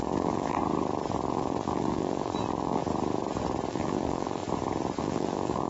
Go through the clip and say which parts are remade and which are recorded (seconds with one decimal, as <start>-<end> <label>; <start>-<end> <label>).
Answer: 0.0-0.6 remade; 0.6-1.3 recorded; 1.3-2.8 remade; 2.8-3.7 recorded; 3.7-4.4 remade; 4.4-5.0 recorded; 5.0-5.7 remade